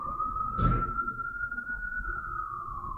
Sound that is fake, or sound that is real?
real